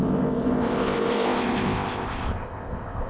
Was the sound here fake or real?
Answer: fake